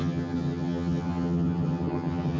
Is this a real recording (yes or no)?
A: no